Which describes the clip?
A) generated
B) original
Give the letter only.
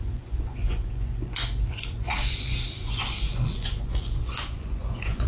A